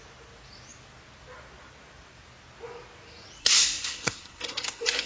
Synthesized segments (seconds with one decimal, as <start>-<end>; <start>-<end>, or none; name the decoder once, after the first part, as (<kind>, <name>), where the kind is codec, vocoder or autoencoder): 3.4-5.1 (codec, SNAC)